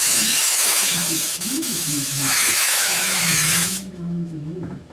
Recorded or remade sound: remade